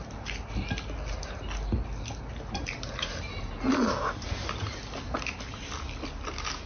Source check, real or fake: real